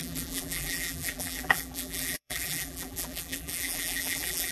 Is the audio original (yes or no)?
no